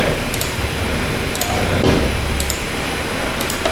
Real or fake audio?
fake